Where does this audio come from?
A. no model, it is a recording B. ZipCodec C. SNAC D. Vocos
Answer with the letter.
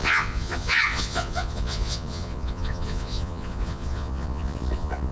D